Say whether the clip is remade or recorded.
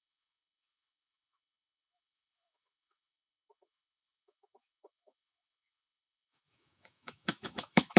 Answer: remade